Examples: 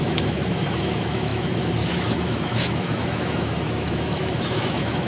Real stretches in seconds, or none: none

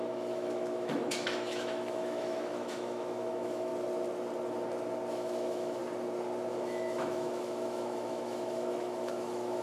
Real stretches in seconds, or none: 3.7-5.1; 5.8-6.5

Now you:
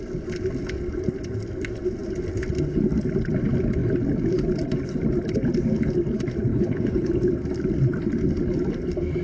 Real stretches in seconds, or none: 0.0-6.5; 7.1-9.2

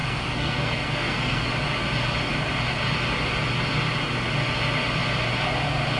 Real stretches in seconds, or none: 1.5-6.0

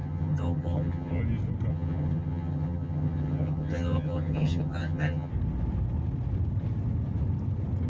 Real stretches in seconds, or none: 1.2-1.7; 5.3-7.9

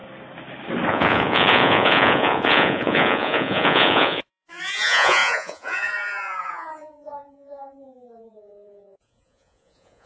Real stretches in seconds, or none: 0.0-0.9

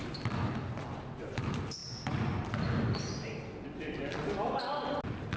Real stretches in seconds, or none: 0.0-5.4